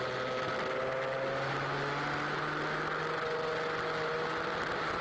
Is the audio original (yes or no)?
yes